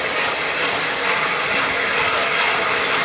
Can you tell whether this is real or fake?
real